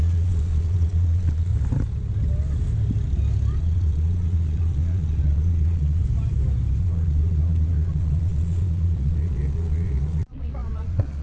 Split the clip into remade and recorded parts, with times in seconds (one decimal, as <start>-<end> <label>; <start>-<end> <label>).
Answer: 0.0-1.5 remade; 1.5-3.6 recorded; 3.6-6.0 remade; 6.0-6.8 recorded; 6.8-11.2 remade